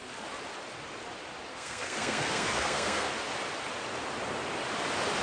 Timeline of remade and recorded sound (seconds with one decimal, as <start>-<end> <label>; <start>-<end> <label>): 0.0-1.5 recorded; 1.5-3.1 remade; 3.1-5.2 recorded